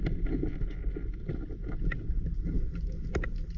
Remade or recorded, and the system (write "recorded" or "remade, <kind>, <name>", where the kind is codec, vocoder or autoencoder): recorded